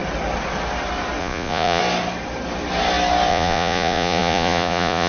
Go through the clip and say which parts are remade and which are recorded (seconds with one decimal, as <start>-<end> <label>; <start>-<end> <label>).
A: 0.0-1.2 recorded; 1.2-1.8 remade; 1.8-3.3 recorded; 3.3-5.1 remade